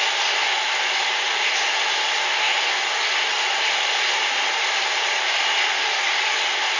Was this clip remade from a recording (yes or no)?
no